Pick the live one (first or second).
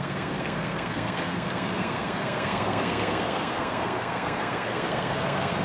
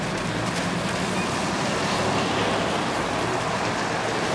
second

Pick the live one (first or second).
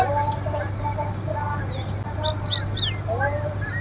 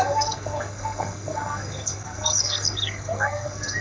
first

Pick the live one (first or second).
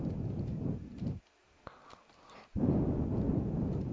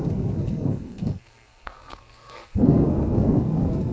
first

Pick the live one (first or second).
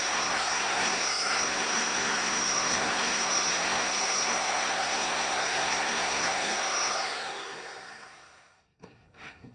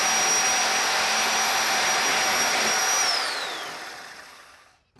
second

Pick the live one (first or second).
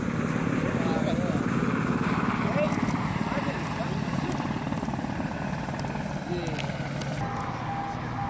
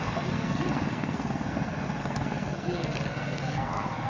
first